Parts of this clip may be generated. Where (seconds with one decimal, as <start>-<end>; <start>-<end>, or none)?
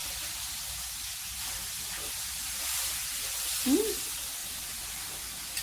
0.0-3.4; 4.4-4.9